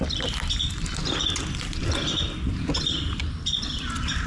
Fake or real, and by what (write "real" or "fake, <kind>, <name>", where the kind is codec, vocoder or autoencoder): real